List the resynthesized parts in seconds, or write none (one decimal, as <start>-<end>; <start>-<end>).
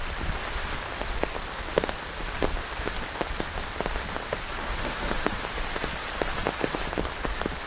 4.6-5.4